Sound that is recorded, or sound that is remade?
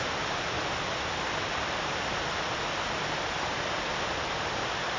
recorded